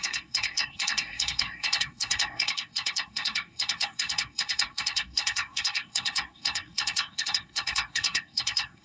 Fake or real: fake